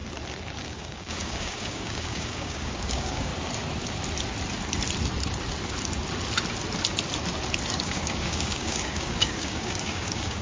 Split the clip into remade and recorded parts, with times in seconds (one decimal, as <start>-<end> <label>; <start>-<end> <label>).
0.0-0.6 recorded; 0.6-3.3 remade; 3.3-7.8 recorded; 7.8-10.4 remade